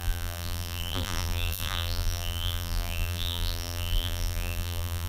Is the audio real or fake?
fake